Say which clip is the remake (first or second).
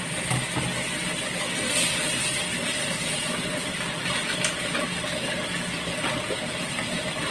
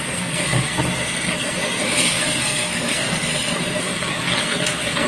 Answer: second